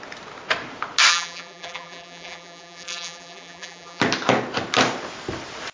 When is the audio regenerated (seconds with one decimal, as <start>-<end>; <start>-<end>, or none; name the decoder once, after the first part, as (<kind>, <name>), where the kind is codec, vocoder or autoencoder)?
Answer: 1.1-4.0 (vocoder, BigVGAN v2)